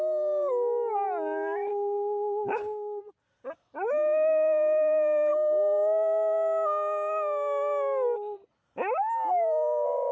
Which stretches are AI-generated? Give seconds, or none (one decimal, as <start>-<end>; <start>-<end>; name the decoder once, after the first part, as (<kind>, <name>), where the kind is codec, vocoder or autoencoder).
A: 1.7-3.0 (codec, DAC)